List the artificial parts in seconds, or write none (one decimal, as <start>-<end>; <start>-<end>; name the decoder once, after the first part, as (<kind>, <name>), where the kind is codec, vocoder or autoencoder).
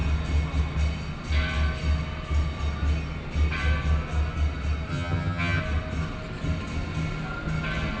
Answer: 4.9-5.6 (vocoder, HiFi-GAN)